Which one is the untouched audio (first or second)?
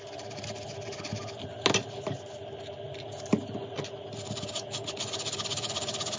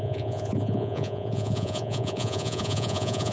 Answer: first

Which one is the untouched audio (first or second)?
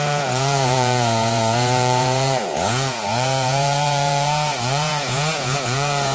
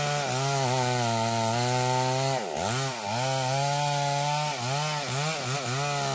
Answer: second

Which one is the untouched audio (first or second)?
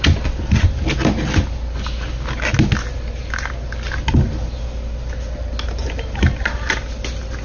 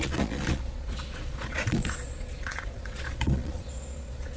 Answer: first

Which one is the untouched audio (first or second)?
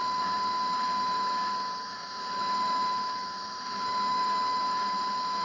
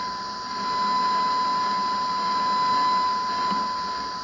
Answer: second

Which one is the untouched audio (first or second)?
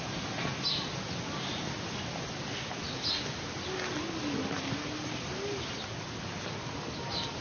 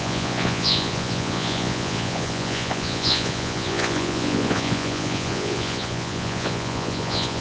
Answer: first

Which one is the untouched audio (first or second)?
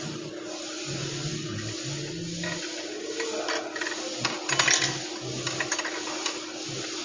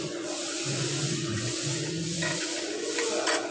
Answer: first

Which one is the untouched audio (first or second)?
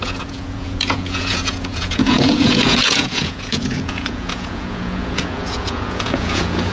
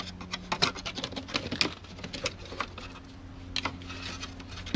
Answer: second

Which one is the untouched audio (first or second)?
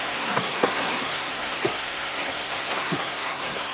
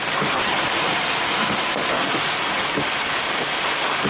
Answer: second